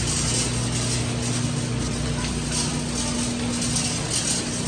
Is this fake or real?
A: real